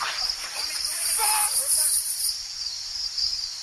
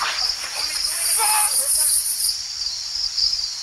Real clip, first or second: second